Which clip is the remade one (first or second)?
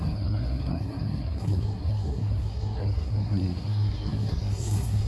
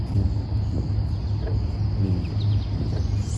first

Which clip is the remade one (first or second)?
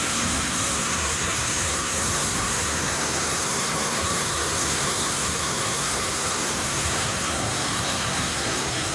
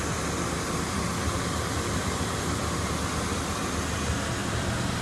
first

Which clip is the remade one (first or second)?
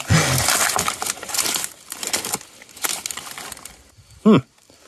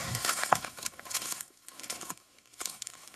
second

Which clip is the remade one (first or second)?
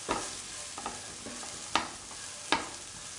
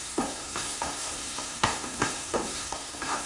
second